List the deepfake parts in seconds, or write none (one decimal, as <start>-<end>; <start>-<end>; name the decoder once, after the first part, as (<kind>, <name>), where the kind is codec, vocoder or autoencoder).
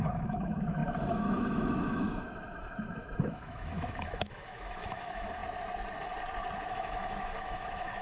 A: 0.0-5.4 (autoencoder, DAC-VAE); 6.7-8.0